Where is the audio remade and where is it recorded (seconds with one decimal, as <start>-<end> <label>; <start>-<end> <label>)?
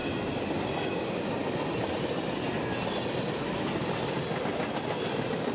0.0-5.5 recorded